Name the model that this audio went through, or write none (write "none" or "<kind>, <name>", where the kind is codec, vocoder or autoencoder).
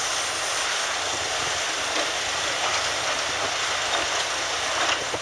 none